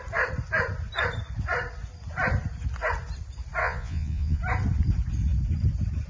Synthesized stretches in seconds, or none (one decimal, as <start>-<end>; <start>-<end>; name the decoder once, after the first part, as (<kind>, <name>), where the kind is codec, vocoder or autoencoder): 3.6-4.4 (vocoder, Vocos)